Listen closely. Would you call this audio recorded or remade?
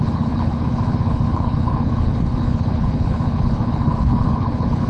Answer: remade